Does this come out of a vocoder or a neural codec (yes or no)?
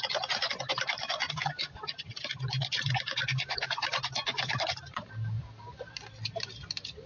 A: no